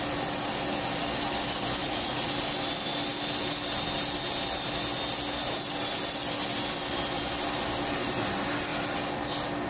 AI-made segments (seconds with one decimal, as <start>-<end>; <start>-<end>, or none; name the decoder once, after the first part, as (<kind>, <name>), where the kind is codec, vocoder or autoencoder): 1.8-2.3 (vocoder, Vocos)